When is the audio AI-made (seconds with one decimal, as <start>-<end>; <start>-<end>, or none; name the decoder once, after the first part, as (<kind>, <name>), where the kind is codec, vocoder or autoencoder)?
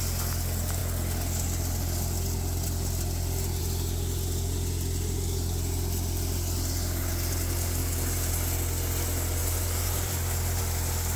7.8-8.3 (vocoder, BigVGAN v2); 9.4-10.6